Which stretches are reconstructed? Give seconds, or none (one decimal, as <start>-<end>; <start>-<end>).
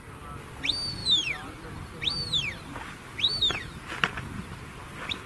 none